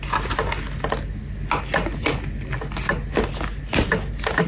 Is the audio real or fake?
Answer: real